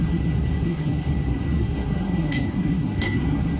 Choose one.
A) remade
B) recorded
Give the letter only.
A